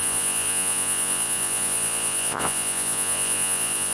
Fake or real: fake